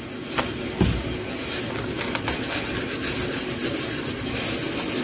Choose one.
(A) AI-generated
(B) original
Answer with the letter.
B